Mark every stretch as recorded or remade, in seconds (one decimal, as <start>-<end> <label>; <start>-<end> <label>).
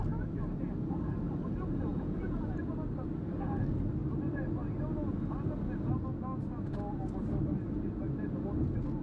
0.0-1.9 recorded; 1.9-2.6 remade; 2.6-9.0 recorded